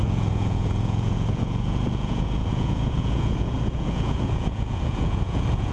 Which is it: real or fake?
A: fake